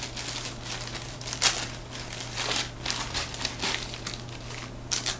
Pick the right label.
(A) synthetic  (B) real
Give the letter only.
B